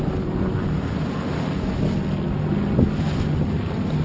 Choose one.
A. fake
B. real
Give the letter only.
B